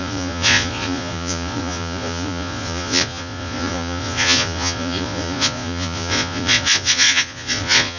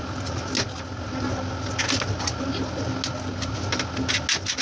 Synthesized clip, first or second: first